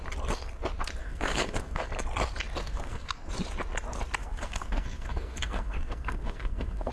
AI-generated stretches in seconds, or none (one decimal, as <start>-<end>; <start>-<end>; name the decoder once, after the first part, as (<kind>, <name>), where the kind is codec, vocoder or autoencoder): 1.0-1.9 (codec, SNAC); 2.6-3.3; 4.2-6.9